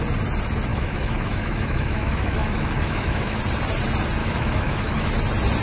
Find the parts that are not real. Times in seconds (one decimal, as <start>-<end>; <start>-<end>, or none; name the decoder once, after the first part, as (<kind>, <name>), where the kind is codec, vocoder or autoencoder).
0.7-3.4 (autoencoder, DAC-VAE); 4.2-5.1